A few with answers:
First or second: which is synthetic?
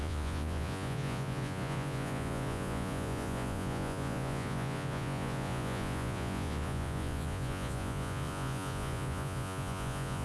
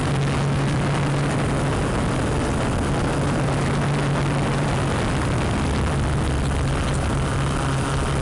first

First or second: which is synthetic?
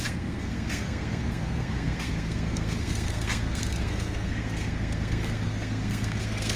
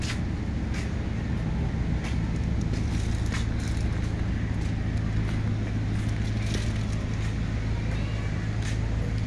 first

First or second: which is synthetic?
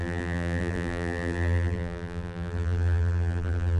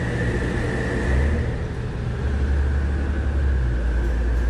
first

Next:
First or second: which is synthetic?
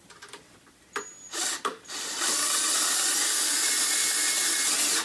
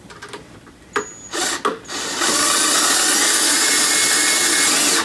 first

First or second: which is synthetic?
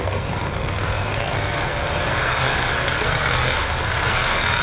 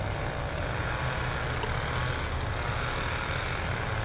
first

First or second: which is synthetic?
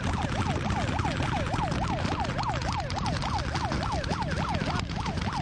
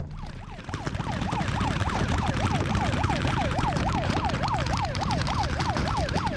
second